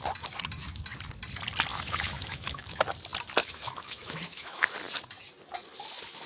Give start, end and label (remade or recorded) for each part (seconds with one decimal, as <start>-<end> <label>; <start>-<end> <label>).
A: 0.0-1.7 recorded; 1.7-2.8 remade; 2.8-3.4 recorded; 3.4-4.7 remade; 4.7-6.3 recorded